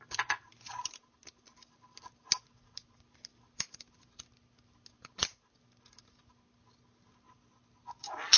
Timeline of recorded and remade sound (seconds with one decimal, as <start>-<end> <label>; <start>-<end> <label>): 0.0-8.4 recorded